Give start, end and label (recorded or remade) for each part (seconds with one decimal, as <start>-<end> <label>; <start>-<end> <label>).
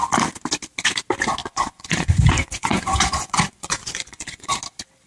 0.0-1.4 recorded; 1.4-4.5 remade; 4.5-5.1 recorded